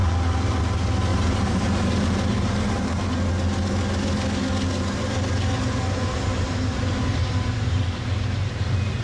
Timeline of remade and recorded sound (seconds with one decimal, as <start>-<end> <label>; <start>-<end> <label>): 0.0-1.1 recorded; 1.1-3.1 remade; 3.1-6.3 recorded; 6.3-9.0 remade